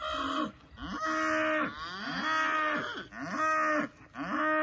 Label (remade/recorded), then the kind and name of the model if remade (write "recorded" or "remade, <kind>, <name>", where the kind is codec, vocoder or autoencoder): recorded